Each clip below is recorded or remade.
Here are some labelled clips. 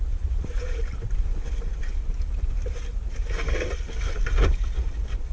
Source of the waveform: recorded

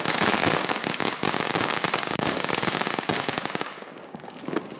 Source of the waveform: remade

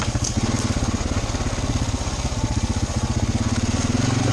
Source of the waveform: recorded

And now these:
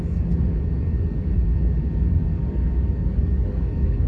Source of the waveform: remade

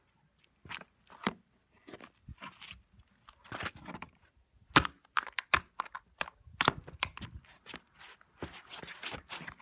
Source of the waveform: recorded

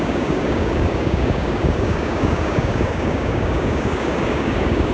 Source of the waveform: remade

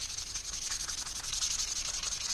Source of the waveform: recorded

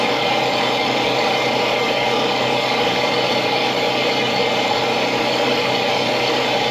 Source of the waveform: remade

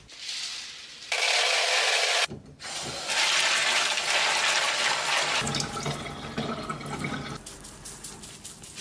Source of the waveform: recorded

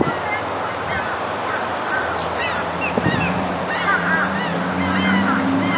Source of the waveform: recorded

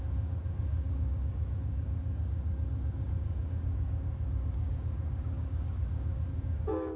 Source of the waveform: remade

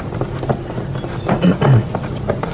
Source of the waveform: recorded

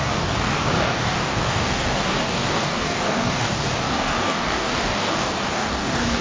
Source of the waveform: remade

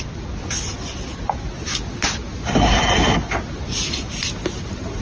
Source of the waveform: recorded